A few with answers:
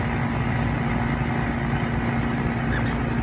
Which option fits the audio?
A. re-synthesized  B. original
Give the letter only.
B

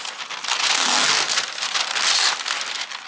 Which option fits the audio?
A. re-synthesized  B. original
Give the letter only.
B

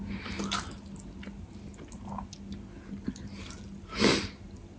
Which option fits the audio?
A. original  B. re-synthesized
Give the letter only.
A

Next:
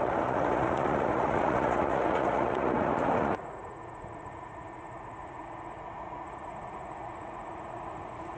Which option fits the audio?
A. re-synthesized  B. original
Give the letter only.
A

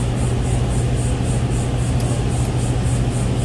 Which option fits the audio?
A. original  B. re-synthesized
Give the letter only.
A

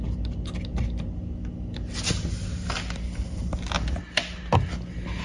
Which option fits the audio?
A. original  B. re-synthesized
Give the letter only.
A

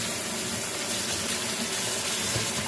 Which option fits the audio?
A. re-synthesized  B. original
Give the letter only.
B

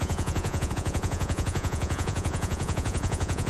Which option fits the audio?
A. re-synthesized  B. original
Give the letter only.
A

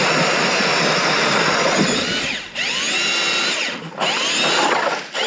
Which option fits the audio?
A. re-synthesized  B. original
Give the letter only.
B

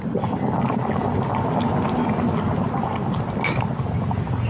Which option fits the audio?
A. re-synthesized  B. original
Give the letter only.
B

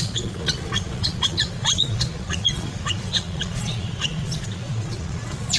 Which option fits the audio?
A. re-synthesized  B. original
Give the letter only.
A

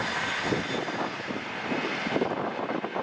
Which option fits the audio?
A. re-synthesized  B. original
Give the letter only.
B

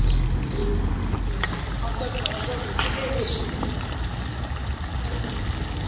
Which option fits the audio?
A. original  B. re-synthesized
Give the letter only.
A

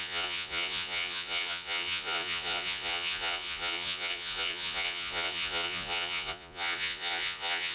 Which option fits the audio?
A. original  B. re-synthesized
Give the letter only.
B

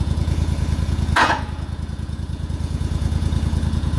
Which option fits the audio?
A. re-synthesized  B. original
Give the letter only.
A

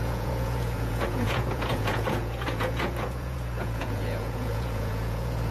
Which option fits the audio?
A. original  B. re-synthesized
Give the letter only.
B